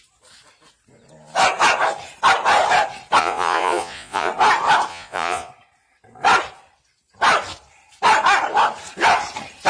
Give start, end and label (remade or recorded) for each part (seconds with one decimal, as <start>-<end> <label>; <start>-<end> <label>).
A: 0.0-3.2 recorded; 3.2-4.3 remade; 4.3-4.9 recorded; 4.9-5.5 remade; 5.5-9.7 recorded